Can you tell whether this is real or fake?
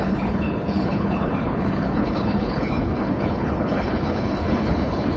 fake